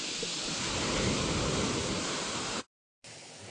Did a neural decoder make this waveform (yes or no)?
no